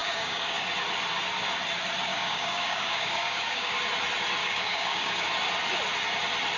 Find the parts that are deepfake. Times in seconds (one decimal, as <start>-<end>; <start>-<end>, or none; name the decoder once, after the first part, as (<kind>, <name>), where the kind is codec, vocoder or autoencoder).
0.0-0.7 (codec, DAC); 2.1-3.8; 4.4-5.3